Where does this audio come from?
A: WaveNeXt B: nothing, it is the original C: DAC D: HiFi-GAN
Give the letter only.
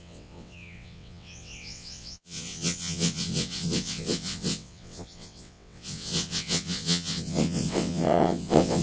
A